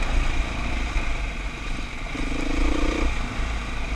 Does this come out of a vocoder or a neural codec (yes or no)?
no